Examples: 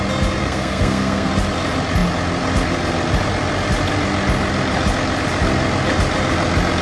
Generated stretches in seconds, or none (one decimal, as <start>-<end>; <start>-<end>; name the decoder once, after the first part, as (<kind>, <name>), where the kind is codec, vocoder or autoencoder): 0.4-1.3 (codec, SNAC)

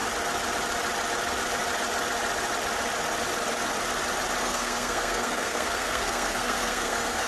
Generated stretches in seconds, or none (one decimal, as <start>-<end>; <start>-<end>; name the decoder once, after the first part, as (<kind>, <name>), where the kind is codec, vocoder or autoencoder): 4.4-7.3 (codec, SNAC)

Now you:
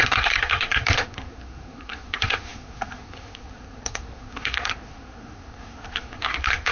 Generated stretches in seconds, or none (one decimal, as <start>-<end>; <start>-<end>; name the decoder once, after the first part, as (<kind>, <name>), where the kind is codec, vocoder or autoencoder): 0.0-6.7 (codec, SNAC)